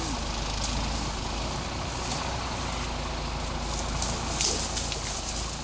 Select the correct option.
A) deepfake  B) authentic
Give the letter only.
B